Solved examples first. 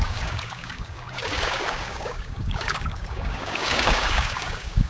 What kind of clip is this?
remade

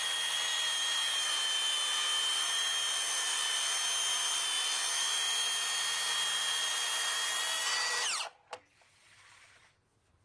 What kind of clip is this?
recorded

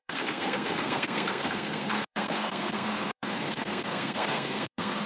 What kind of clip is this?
remade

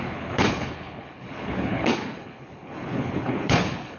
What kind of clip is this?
remade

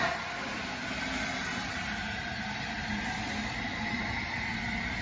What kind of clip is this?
recorded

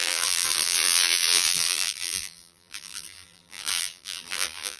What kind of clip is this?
remade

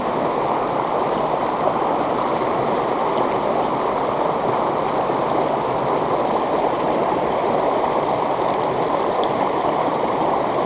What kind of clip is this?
recorded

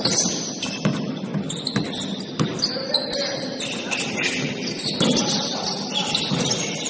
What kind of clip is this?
recorded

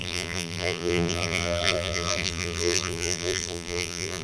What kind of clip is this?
remade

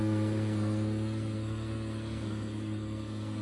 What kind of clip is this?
remade